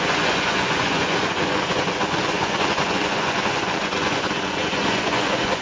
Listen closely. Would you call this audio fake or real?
fake